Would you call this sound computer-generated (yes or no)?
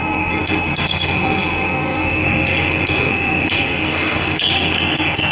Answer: yes